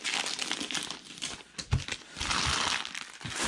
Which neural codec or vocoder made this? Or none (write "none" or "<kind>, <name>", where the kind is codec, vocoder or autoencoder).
none